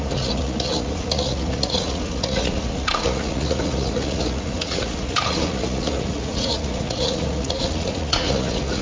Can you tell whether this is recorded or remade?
remade